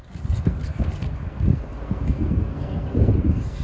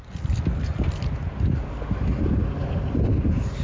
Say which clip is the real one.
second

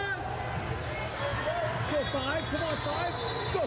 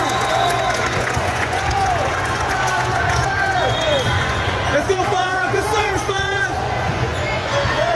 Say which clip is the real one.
first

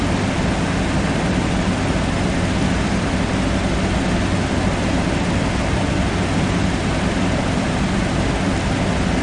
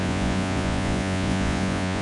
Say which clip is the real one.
first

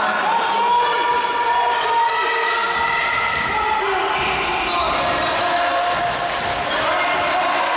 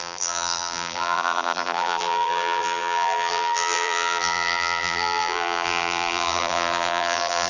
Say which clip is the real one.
first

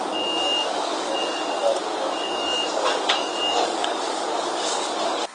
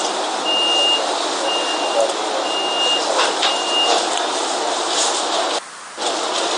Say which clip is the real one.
second